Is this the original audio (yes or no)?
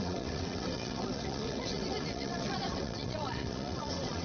no